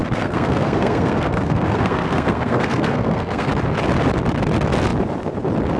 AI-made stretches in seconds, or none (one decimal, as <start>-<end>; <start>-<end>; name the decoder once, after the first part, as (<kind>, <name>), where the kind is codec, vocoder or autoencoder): 0.0-3.5 (codec, SNAC)